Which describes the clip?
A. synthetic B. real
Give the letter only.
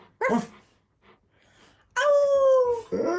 B